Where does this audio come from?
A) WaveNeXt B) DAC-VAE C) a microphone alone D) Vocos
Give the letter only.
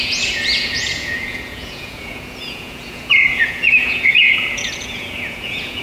D